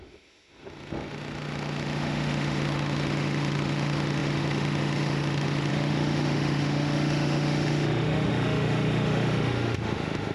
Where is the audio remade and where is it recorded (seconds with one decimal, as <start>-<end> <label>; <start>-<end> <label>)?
0.0-10.3 remade